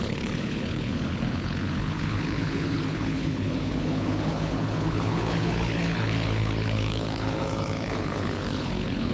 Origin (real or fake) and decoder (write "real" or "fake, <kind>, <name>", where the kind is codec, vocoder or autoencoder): fake, codec, HILCodec